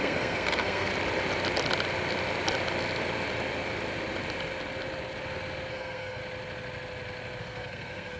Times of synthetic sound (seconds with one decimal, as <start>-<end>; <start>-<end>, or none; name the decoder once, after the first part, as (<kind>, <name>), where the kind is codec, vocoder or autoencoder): 0.0-0.9 (codec, SNAC); 5.7-6.2; 7.4-8.2